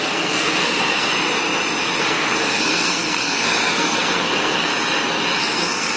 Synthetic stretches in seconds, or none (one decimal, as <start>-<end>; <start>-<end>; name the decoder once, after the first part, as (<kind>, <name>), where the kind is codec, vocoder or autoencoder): 0.0-1.1 (codec, SNAC); 2.0-4.7; 5.4-6.0